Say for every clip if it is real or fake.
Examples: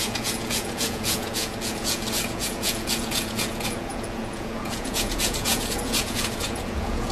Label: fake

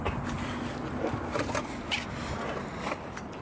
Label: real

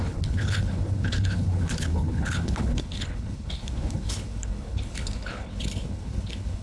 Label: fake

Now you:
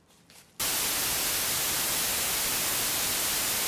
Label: real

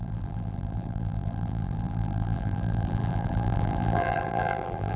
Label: fake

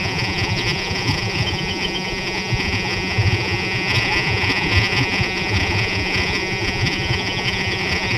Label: fake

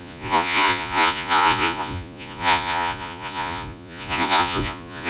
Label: fake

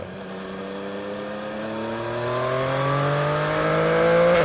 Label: real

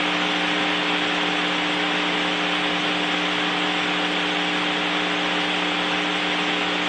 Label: real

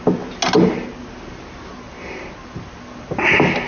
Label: real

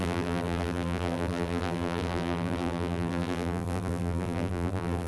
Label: fake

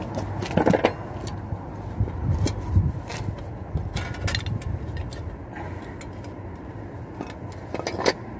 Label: real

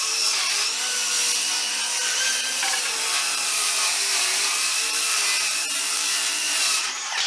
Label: fake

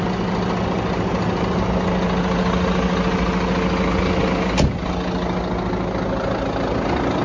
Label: real